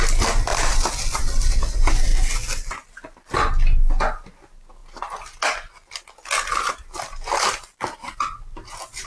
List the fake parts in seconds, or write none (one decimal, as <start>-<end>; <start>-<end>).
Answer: none